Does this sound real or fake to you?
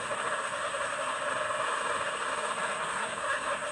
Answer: fake